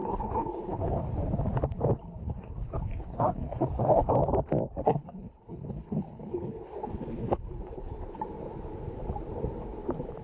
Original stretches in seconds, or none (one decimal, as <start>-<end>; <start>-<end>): 1.1-2.2; 4.1-4.8; 8.2-10.2